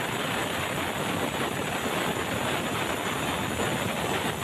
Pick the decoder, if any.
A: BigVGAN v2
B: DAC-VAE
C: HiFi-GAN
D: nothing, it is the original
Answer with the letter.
A